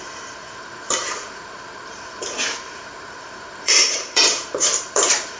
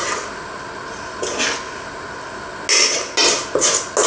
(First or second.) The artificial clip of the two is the first